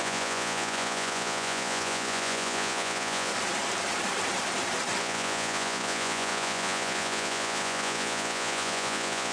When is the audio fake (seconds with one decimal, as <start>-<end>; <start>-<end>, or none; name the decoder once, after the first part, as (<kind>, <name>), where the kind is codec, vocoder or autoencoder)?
0.0-3.3 (vocoder, Vocos); 5.0-9.3